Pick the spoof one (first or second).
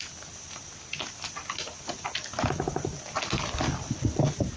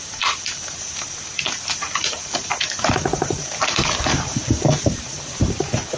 second